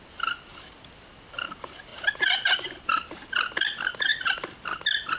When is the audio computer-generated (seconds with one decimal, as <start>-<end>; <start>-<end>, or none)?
none